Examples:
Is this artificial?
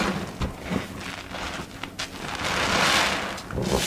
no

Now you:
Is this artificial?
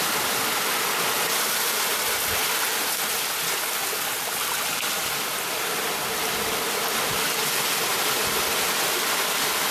no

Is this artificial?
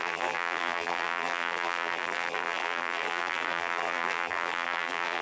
yes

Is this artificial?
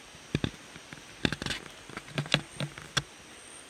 no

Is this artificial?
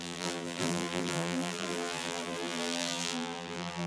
yes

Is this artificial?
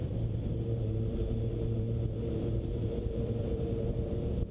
yes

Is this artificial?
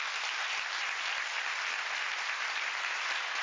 no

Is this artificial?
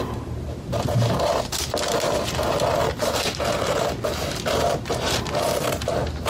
no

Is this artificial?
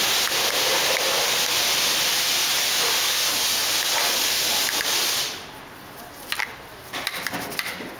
no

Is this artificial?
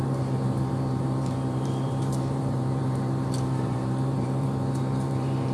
yes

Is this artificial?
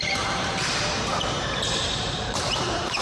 yes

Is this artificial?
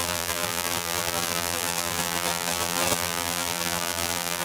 yes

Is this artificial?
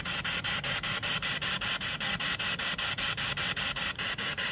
yes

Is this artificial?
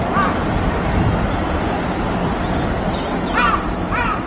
no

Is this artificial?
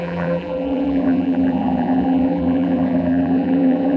yes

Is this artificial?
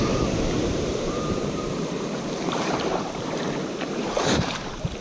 yes